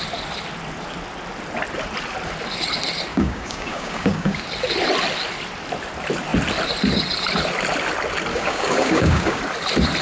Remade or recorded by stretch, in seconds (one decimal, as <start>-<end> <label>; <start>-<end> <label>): 0.0-3.1 recorded; 3.1-4.4 remade; 4.4-8.3 recorded; 8.3-9.4 remade; 9.4-10.0 recorded